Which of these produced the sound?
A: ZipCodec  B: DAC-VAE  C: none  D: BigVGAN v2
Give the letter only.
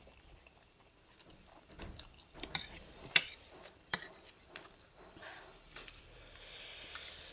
D